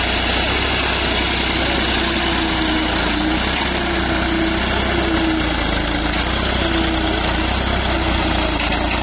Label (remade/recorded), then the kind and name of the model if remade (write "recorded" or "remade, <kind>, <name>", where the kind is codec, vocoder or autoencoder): recorded